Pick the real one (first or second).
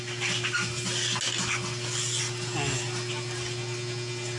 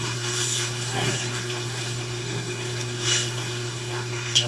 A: first